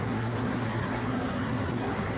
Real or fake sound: fake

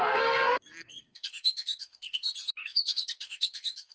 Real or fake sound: fake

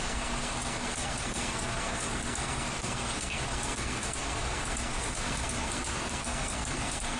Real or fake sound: fake